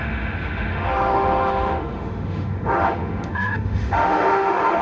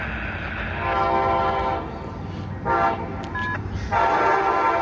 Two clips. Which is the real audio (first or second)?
second